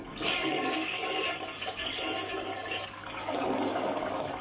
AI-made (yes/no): yes